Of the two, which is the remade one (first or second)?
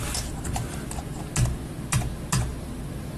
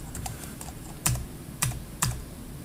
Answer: second